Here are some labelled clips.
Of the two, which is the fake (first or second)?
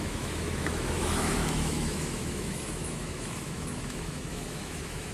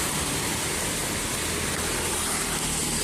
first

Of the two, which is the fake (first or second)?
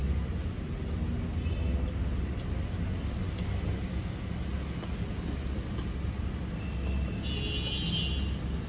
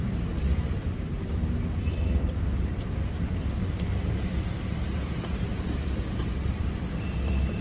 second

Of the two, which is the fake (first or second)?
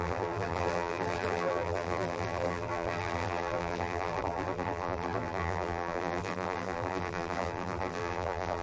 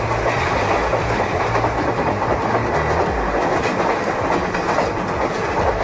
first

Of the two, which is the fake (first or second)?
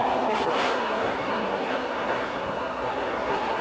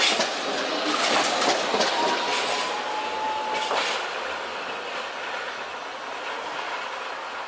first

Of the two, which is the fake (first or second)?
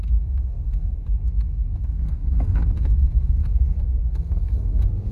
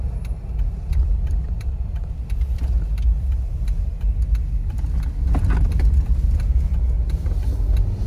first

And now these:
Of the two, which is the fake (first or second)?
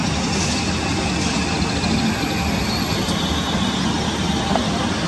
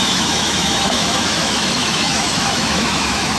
second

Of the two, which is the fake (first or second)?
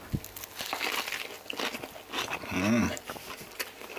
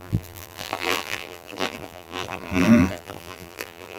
second